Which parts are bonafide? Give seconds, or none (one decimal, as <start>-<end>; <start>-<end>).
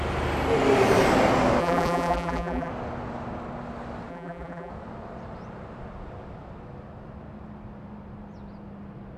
0.0-1.6; 2.7-4.1; 4.7-9.2